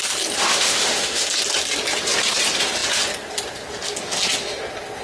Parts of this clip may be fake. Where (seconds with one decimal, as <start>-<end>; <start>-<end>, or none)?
0.5-1.3

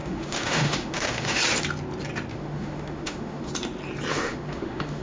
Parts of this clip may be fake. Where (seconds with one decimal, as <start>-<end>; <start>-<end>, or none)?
0.0-1.4; 2.3-3.5; 4.1-5.0

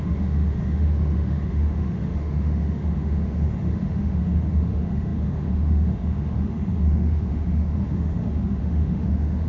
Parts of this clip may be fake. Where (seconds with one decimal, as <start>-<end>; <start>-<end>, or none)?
0.0-9.5